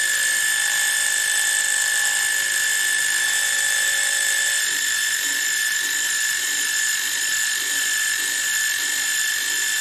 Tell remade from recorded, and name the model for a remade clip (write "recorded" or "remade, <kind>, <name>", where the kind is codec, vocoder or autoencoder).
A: remade, vocoder, BigVGAN v2